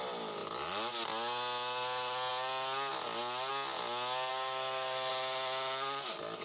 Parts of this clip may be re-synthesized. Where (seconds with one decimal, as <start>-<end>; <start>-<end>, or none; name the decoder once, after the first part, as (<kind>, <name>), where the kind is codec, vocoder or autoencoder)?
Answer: 4.3-5.1 (codec, SNAC)